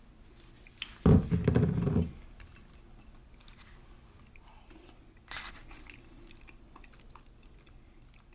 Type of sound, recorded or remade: recorded